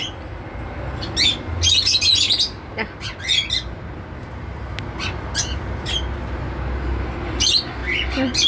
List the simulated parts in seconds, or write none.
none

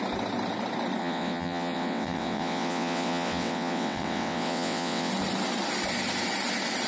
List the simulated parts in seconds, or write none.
1.0-5.1 (vocoder, WaveNeXt)

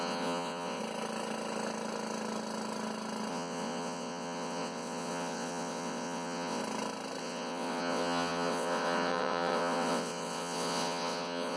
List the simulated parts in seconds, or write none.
0.0-0.8 (vocoder, WaveNeXt); 3.3-6.6; 7.2-11.6

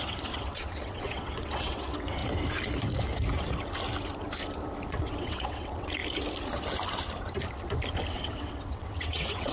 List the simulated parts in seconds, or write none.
0.0-2.2 (vocoder, WaveNeXt); 4.9-6.0; 8.1-9.5